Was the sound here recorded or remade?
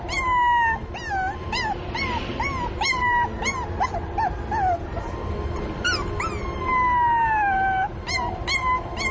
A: recorded